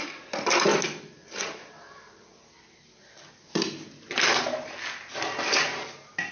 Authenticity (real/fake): real